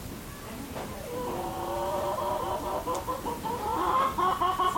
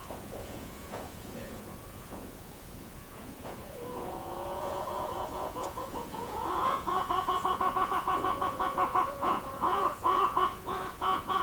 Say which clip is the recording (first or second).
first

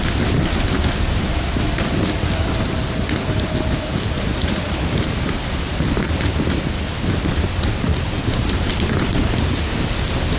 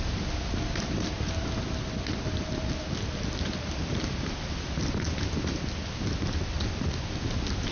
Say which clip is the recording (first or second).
second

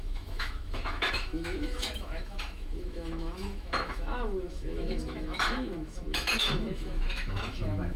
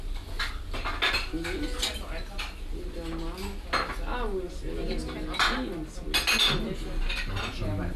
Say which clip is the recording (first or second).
second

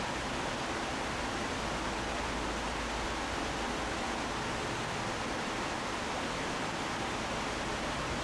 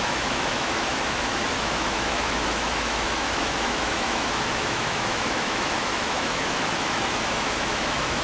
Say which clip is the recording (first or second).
first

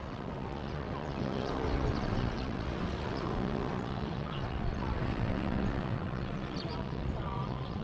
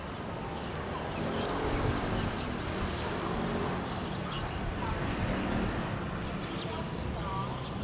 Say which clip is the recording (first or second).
second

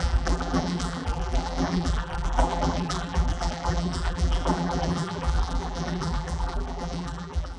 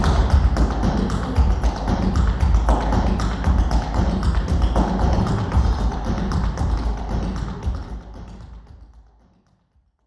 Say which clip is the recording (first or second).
second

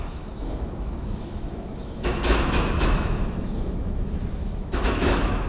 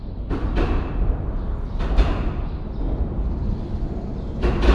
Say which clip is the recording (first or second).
second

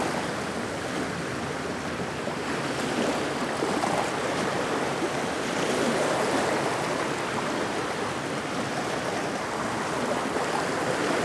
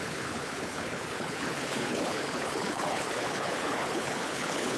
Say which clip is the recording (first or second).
first